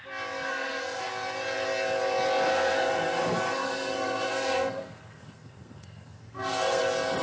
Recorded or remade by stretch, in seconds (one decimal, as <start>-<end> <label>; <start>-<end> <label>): 0.0-0.5 recorded; 0.5-1.1 remade; 1.1-2.5 recorded; 2.5-6.8 remade; 6.8-7.2 recorded